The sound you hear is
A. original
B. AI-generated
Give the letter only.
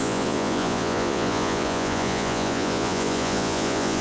B